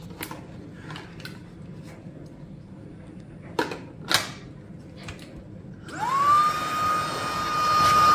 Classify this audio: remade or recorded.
recorded